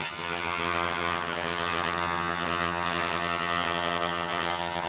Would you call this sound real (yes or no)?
no